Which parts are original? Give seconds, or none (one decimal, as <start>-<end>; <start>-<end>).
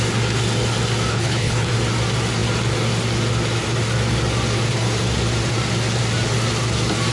0.0-1.1; 1.7-7.1